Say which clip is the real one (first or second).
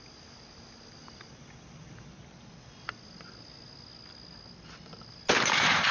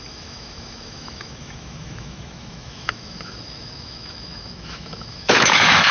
first